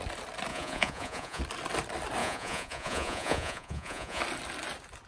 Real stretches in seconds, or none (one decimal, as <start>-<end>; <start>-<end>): 0.0-0.5; 1.4-2.2; 4.2-5.1